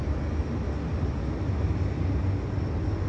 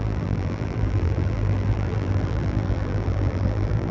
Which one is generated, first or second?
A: second